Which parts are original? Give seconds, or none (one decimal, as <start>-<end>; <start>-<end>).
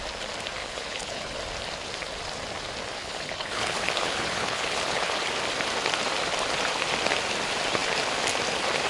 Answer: 0.0-0.6; 1.4-3.0; 5.2-8.9